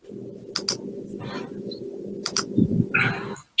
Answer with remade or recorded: recorded